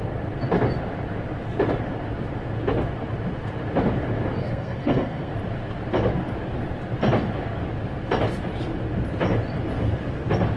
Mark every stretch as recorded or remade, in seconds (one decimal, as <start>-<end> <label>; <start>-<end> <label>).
0.0-4.4 recorded; 4.4-5.3 remade; 5.3-10.6 recorded